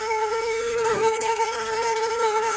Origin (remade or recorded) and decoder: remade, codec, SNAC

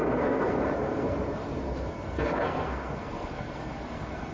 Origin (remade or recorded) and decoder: remade, codec, SNAC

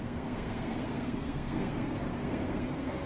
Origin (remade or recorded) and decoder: remade, codec, SNAC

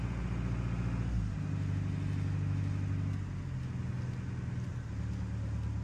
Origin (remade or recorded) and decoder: recorded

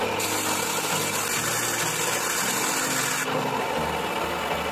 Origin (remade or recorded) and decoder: recorded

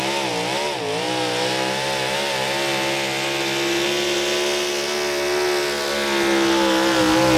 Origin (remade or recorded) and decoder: recorded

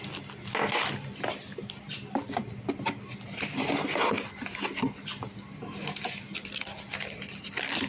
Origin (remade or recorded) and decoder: recorded